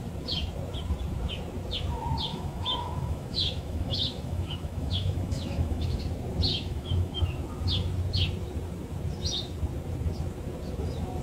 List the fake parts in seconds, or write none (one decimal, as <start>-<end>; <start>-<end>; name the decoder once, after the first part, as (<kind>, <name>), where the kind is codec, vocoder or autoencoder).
2.3-6.0 (autoencoder, DAC-VAE); 6.5-7.2